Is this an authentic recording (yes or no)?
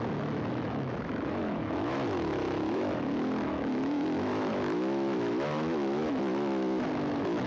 no